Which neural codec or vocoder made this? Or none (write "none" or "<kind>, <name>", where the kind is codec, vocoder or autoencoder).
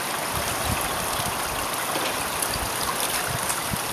none